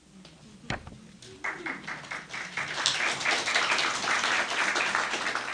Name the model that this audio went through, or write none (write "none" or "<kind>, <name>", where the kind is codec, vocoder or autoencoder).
none